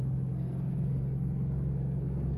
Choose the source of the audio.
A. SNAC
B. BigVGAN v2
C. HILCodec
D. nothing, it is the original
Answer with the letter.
A